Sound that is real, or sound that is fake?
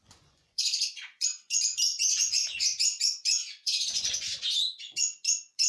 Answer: fake